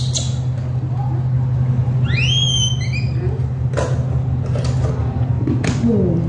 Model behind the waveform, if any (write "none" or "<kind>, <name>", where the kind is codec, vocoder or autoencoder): none